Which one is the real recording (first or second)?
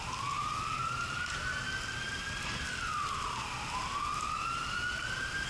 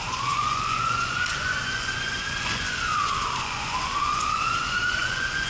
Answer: first